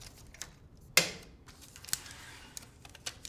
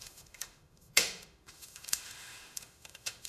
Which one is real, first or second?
first